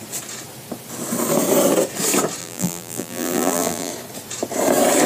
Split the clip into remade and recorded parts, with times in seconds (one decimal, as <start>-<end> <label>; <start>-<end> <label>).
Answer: 0.0-2.4 recorded; 2.4-3.9 remade; 3.9-5.1 recorded